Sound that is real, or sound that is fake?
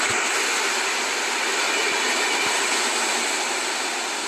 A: real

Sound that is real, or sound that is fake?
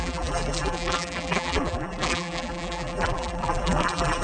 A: fake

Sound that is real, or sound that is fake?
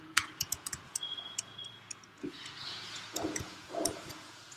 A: fake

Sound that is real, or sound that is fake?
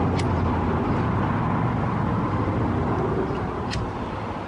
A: real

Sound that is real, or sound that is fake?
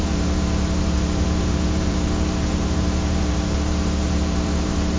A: fake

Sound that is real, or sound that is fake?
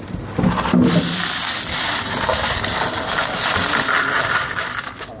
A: real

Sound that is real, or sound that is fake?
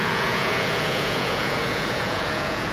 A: fake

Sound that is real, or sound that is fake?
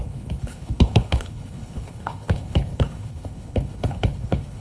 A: fake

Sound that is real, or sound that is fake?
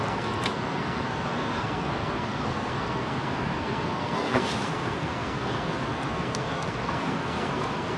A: fake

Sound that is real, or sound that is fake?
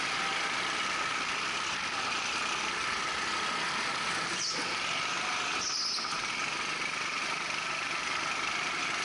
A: real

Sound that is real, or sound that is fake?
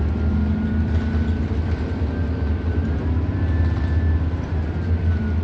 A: real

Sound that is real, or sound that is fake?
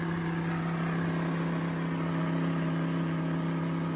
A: real